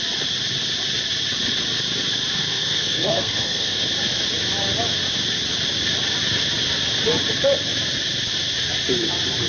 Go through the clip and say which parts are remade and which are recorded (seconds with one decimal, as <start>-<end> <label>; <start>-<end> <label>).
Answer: 0.0-2.4 recorded; 2.4-3.8 remade; 3.8-9.5 recorded